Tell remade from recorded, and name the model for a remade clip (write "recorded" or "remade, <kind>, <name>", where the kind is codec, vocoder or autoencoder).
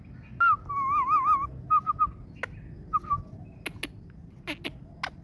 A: recorded